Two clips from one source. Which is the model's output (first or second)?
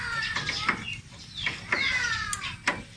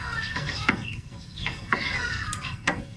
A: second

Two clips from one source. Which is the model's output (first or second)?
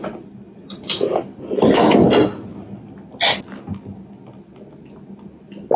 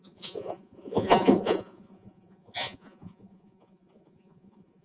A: second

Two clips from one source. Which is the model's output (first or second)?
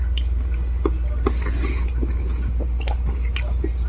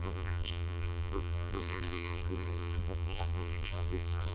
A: second